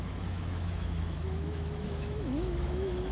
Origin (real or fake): fake